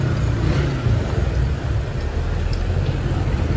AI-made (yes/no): yes